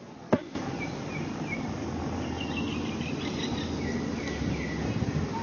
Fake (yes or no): no